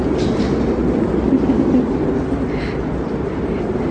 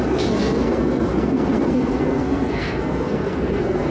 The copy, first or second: second